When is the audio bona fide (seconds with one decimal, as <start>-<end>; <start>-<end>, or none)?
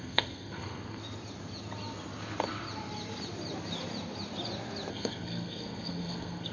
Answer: 1.0-4.9